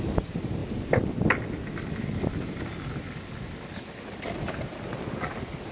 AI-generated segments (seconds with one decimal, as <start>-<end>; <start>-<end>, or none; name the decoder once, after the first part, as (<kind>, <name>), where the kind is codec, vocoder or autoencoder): none